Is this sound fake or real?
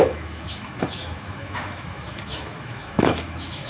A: fake